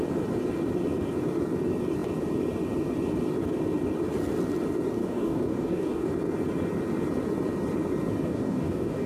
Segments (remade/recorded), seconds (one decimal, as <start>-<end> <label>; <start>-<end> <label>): 0.0-5.0 recorded; 5.0-6.1 remade; 6.1-8.3 recorded; 8.3-9.1 remade